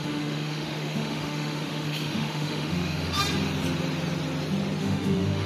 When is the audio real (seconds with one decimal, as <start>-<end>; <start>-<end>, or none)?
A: 3.2-4.8